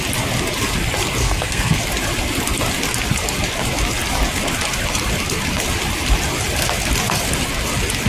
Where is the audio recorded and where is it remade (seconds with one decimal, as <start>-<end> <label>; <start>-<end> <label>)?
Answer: 0.0-1.2 recorded; 1.2-1.8 remade; 1.8-8.1 recorded